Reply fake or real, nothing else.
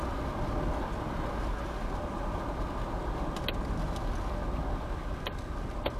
real